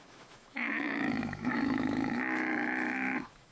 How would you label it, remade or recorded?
remade